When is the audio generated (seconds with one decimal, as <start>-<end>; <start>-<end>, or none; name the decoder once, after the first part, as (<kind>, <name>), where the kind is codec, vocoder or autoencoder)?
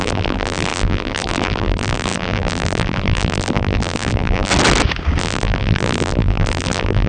0.0-4.5 (vocoder, BigVGAN v2); 5.2-7.1